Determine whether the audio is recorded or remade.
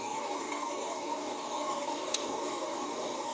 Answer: remade